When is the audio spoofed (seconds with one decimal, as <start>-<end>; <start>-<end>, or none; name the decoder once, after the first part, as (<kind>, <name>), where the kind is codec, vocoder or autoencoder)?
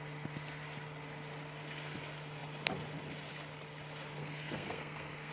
4.2-5.3 (codec, SNAC)